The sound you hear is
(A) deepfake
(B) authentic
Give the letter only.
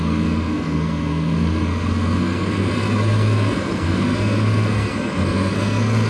A